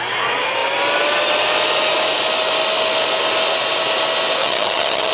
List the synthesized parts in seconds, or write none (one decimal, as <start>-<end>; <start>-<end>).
4.4-5.1